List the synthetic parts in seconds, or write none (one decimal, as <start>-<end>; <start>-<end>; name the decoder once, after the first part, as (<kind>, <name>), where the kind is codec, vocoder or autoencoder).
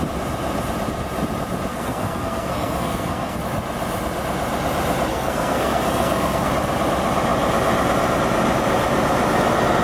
1.7-3.4 (codec, SNAC); 5.1-6.5